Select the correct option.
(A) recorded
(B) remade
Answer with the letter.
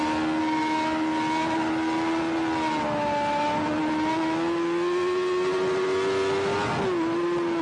A